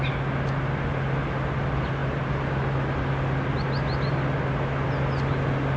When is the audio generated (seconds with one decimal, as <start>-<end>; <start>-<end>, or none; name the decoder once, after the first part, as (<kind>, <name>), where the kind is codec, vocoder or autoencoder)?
none